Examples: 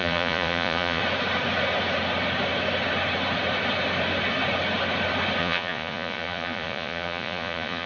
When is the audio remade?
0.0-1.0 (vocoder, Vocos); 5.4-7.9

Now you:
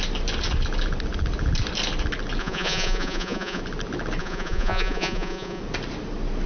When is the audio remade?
2.4-3.6 (vocoder, Vocos); 4.2-5.6

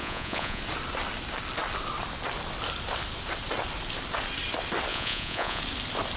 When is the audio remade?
0.0-0.6 (vocoder, Vocos); 4.9-5.6

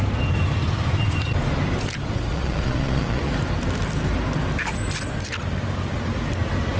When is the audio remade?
2.3-3.3 (vocoder, Vocos)